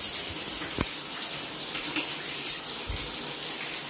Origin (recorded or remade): recorded